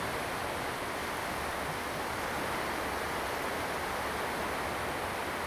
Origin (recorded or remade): recorded